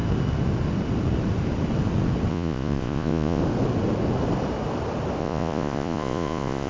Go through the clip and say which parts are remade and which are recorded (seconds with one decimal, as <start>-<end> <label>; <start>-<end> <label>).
0.0-2.3 recorded; 2.3-3.4 remade; 3.4-5.2 recorded; 5.2-6.7 remade